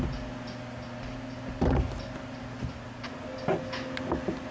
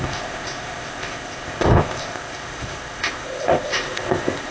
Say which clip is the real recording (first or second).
first